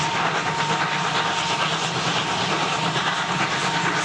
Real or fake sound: real